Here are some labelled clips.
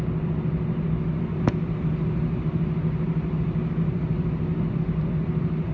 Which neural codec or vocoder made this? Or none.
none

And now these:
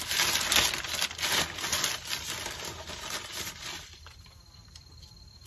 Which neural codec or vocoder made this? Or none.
none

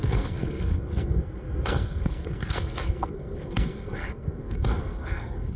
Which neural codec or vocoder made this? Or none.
codec, SNAC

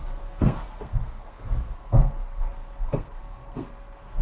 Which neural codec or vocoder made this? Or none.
codec, SNAC